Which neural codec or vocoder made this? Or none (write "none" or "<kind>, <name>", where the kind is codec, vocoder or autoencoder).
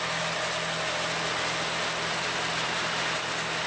none